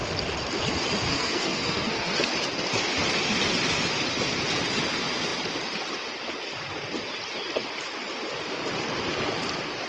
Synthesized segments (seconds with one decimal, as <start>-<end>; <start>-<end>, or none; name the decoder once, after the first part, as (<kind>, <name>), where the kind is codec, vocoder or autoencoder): 1.1-2.3 (codec, SNAC)